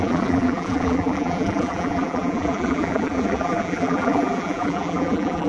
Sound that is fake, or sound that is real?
fake